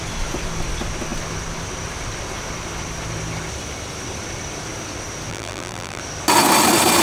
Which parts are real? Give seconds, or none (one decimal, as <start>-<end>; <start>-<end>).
0.0-5.3; 6.0-7.0